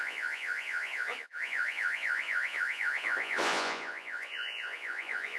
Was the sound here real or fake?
fake